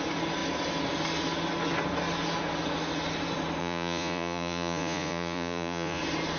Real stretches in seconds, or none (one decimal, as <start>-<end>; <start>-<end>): 0.0-3.6; 6.0-6.4